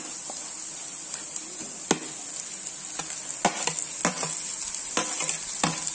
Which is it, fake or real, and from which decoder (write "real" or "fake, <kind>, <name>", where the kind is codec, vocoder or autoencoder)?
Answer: real